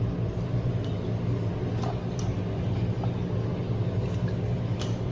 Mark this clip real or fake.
real